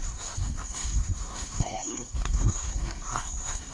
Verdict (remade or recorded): remade